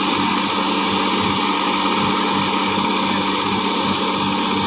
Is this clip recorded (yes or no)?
yes